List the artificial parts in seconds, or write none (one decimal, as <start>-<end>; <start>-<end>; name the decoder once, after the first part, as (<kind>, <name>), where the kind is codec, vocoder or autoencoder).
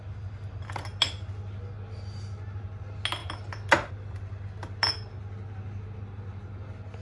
none